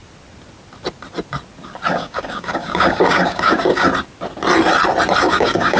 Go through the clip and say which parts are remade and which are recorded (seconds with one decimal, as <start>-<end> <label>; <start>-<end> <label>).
0.0-1.9 recorded; 1.9-3.9 remade; 3.9-5.2 recorded; 5.2-5.8 remade